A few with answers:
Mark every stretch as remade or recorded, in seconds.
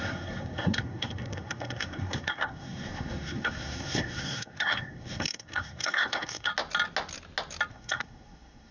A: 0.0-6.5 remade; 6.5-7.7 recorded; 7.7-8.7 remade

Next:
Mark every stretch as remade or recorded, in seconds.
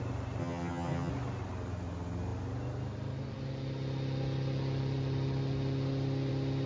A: 0.0-0.4 recorded; 0.4-1.1 remade; 1.1-6.7 recorded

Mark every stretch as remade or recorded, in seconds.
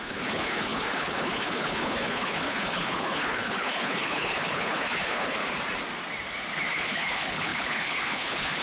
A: 0.0-5.4 remade; 5.4-6.7 recorded; 6.7-8.6 remade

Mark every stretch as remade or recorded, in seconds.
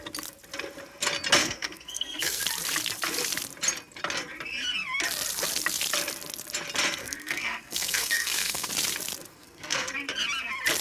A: 0.0-1.4 recorded; 1.4-2.4 remade; 2.4-7.0 recorded; 7.0-8.7 remade; 8.7-9.3 recorded; 9.3-9.9 remade; 9.9-10.8 recorded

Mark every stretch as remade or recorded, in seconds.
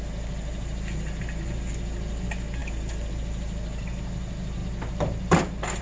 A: 0.0-5.8 recorded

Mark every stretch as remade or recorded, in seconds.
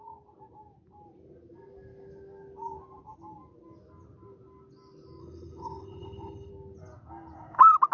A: 0.0-5.2 recorded; 5.2-6.5 remade; 6.5-7.9 recorded